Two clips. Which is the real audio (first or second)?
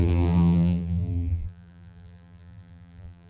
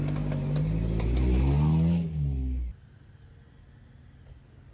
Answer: second